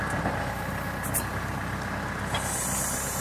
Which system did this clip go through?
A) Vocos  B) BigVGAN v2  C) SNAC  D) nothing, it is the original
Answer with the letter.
D